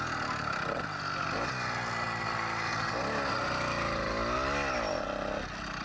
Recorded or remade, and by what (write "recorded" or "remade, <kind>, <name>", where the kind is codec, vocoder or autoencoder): recorded